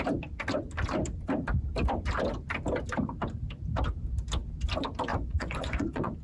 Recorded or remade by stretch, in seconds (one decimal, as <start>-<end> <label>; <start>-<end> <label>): 0.0-5.1 recorded; 5.1-6.2 remade

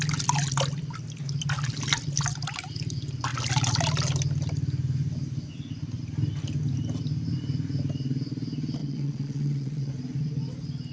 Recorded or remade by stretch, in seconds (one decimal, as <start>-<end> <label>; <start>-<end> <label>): 0.0-8.8 recorded; 8.8-9.9 remade; 9.9-10.9 recorded

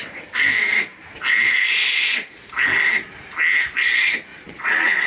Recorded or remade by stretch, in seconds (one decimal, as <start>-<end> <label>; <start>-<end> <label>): 0.0-4.3 recorded; 4.3-5.1 remade